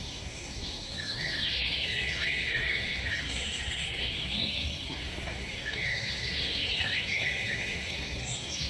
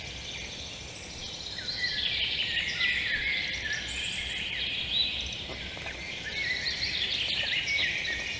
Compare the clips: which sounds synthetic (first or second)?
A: first